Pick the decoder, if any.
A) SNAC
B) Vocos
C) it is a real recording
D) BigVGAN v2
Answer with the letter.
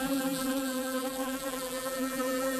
D